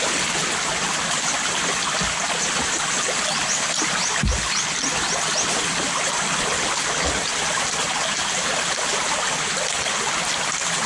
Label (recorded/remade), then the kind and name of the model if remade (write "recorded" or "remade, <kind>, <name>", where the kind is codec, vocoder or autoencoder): recorded